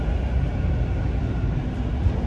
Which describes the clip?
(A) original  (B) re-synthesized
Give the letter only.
A